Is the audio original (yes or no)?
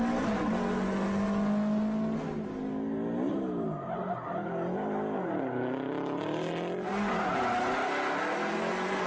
yes